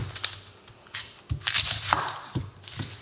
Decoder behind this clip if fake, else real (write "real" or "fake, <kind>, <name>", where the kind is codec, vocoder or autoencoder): real